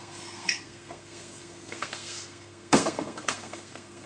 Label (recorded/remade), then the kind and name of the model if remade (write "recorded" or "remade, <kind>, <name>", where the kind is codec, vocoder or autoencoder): remade, codec, SNAC